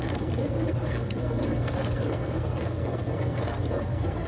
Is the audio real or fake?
fake